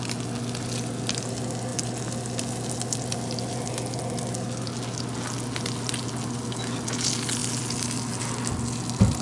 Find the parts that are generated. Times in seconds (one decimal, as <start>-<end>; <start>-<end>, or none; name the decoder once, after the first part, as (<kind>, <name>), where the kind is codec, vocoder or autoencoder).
none